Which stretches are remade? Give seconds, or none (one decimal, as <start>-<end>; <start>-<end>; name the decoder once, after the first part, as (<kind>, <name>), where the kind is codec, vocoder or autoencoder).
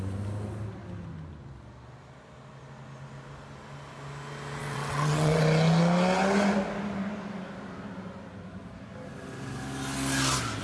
4.6-5.4 (vocoder, WaveNeXt)